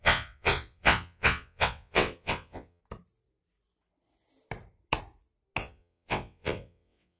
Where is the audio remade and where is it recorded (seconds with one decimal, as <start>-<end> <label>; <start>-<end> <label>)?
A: 0.0-2.8 remade; 2.8-5.6 recorded; 5.6-7.2 remade